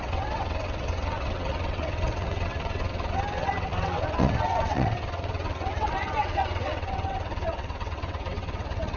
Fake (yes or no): yes